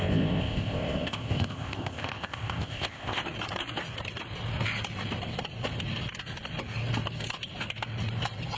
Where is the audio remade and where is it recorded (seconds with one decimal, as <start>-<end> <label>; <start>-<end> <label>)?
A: 0.0-3.2 remade; 3.2-8.6 recorded